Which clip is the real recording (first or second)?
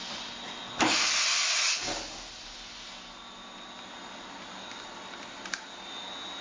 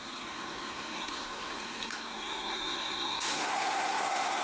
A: first